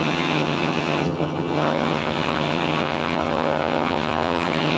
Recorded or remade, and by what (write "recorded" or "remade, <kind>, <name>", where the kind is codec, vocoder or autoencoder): remade, vocoder, HiFi-GAN